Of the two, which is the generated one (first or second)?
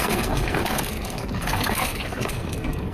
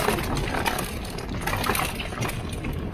first